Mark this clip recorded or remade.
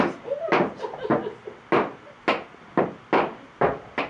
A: recorded